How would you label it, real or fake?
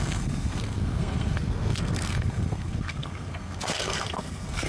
fake